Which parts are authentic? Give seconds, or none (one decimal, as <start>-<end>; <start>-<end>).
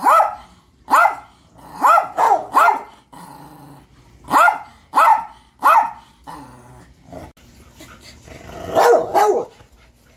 0.0-10.2